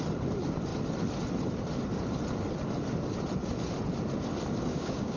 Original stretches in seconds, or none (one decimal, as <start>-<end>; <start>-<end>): 0.0-4.7